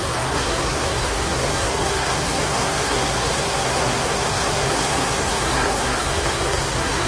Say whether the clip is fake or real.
fake